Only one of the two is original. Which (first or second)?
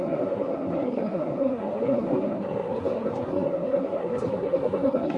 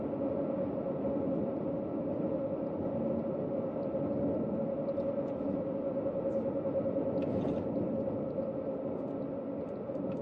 second